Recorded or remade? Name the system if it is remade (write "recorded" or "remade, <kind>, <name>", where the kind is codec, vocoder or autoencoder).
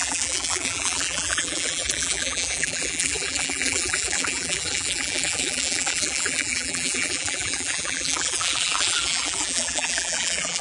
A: remade, vocoder, BigVGAN v2